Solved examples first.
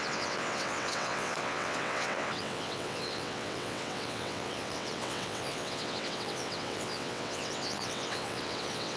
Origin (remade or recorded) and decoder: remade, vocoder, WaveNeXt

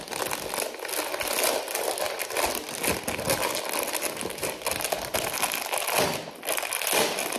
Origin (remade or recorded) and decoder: recorded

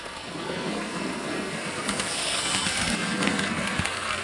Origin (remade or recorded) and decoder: remade, codec, SNAC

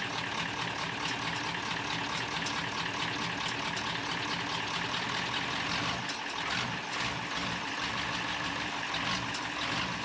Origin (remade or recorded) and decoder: recorded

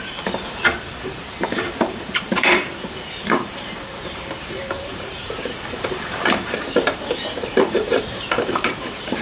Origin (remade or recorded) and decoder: remade, vocoder, BigVGAN v2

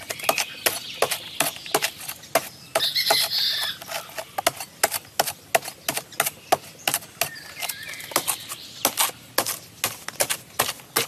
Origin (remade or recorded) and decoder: recorded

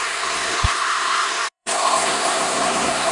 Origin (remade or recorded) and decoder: remade, codec, SNAC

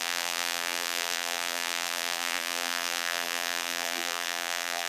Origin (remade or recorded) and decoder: remade, vocoder, BigVGAN v2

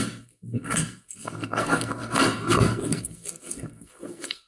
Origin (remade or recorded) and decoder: remade, codec, SNAC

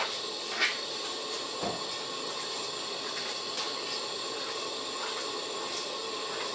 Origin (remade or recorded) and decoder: recorded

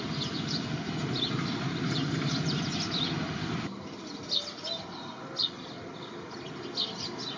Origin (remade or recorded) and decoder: recorded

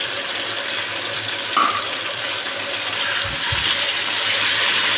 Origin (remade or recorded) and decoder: remade, vocoder, BigVGAN v2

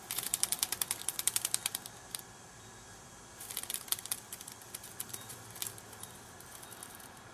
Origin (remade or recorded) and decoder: remade, vocoder, BigVGAN v2